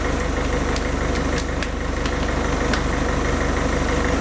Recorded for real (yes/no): yes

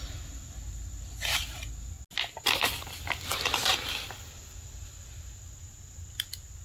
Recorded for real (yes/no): yes